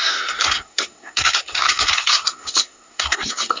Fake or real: fake